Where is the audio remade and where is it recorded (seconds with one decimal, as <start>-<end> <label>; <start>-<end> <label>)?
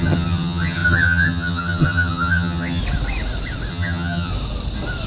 0.0-2.8 remade; 2.8-3.7 recorded; 3.7-4.3 remade; 4.3-5.1 recorded